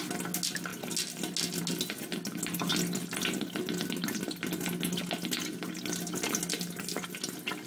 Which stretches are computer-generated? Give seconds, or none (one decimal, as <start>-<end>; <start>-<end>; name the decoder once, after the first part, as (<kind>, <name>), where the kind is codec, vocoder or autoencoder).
none